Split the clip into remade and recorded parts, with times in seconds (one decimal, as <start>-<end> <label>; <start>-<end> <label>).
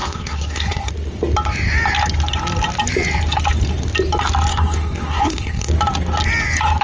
0.0-0.9 remade; 0.9-4.5 recorded; 4.5-5.7 remade; 5.7-6.8 recorded